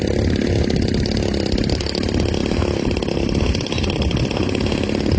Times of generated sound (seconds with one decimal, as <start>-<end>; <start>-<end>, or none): none